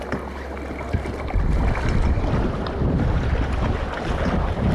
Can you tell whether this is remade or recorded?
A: recorded